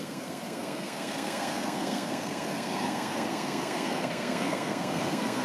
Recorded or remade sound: remade